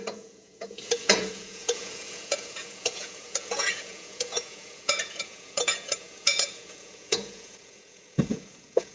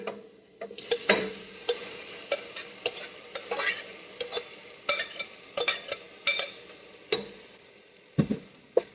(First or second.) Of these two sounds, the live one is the second